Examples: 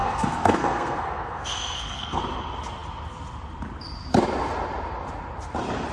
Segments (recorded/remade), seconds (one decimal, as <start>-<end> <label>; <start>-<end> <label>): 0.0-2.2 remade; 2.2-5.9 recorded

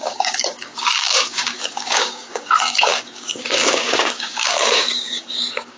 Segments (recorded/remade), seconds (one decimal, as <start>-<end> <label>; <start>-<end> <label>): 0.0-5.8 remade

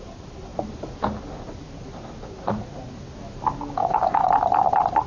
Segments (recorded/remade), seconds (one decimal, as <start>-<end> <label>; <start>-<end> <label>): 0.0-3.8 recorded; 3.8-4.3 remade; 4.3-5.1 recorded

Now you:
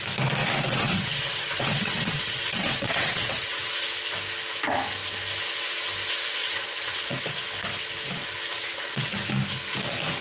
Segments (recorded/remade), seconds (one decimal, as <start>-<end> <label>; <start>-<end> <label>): 0.0-0.4 recorded; 0.4-3.7 remade; 3.7-6.4 recorded; 6.4-7.2 remade; 7.2-8.5 recorded; 8.5-9.3 remade; 9.3-10.2 recorded

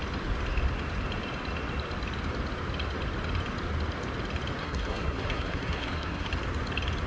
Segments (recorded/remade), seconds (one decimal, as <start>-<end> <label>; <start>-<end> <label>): 0.0-4.6 recorded; 4.6-6.3 remade; 6.3-7.1 recorded

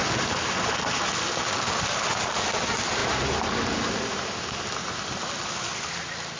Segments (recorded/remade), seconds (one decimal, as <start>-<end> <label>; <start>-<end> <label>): 0.0-6.4 recorded

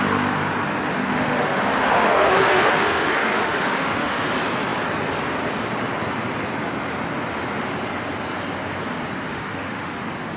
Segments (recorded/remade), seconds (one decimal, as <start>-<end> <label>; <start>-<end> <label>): 0.0-1.0 recorded; 1.0-4.3 remade; 4.3-9.3 recorded; 9.3-10.0 remade; 10.0-10.4 recorded

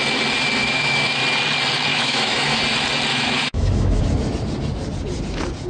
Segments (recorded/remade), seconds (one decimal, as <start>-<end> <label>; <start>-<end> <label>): 0.0-0.6 recorded; 0.6-1.2 remade; 1.2-1.9 recorded; 1.9-2.6 remade; 2.6-3.1 recorded; 3.1-4.0 remade; 4.0-5.7 recorded